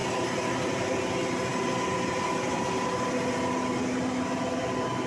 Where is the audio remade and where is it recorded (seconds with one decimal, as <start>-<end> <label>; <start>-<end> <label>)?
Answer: 0.0-5.1 recorded